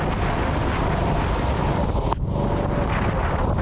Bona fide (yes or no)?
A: yes